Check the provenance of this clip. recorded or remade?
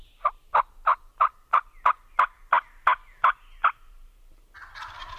recorded